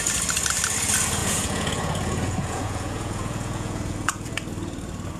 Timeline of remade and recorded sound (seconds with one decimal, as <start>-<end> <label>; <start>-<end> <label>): 0.0-1.2 recorded; 1.2-4.3 remade; 4.3-5.2 recorded